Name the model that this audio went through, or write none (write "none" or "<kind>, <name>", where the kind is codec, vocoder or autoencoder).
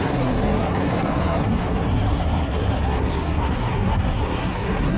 codec, SNAC